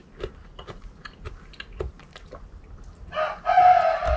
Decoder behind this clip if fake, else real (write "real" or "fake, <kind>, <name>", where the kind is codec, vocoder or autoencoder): real